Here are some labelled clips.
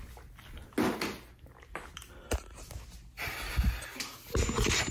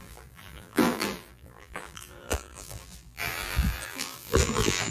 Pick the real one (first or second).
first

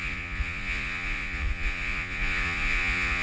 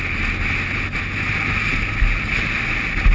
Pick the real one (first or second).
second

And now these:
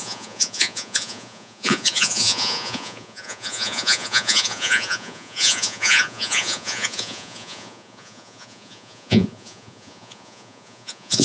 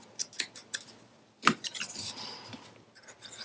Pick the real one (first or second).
second